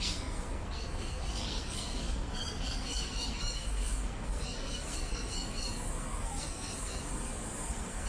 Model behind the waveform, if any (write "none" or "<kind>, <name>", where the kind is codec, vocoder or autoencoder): codec, SNAC